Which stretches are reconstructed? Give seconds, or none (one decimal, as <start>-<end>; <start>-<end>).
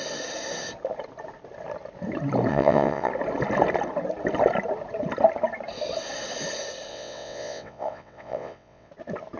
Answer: 2.5-3.1; 6.9-8.9